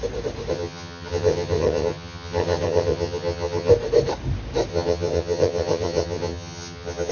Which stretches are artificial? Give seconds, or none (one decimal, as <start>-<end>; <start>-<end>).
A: 0.5-3.7; 4.7-7.1